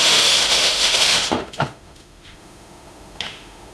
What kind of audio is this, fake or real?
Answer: fake